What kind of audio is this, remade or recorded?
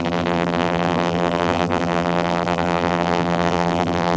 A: remade